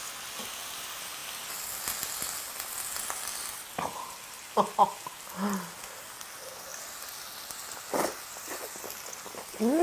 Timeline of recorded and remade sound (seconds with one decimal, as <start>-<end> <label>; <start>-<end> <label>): 0.0-9.8 recorded